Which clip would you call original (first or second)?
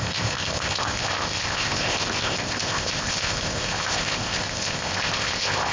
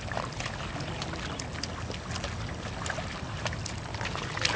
second